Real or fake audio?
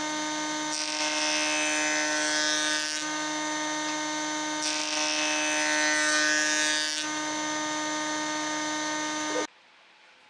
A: real